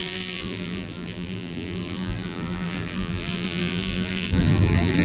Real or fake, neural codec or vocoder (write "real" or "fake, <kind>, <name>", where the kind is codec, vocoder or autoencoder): fake, vocoder, BigVGAN v2